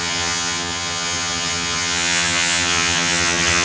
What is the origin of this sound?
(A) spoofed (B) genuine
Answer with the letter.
A